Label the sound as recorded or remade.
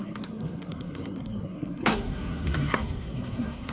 remade